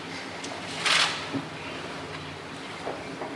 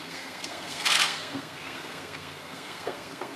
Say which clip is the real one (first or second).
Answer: first